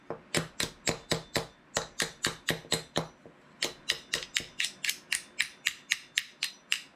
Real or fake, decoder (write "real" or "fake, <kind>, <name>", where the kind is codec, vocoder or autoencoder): real